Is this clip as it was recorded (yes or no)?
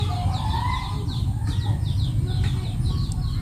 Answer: yes